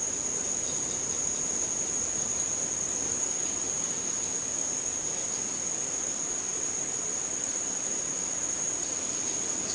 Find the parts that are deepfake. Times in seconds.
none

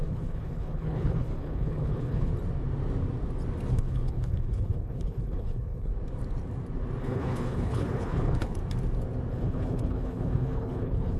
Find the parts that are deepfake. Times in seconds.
0.0-2.3 (codec, HILCodec); 3.7-5.9; 7.0-8.6; 9.3-11.2

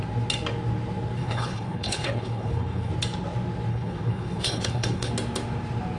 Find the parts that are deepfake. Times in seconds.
1.2-2.9 (codec, HILCodec); 3.7-5.1

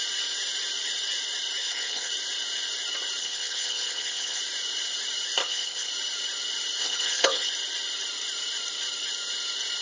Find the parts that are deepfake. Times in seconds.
1.6-2.1 (codec, HILCodec); 3.2-4.4; 5.4-5.9; 6.8-7.5

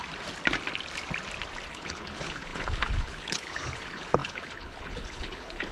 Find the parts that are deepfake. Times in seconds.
1.7-5.7 (codec, HILCodec)

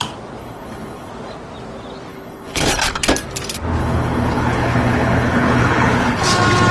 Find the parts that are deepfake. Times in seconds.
0.4-1.1 (codec, HILCodec); 2.1-2.7; 3.8-6.2

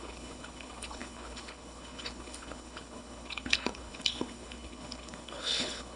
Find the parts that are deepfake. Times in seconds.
0.0-6.0 (codec, HILCodec)